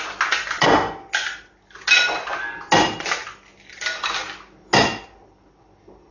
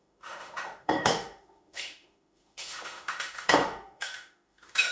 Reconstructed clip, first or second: second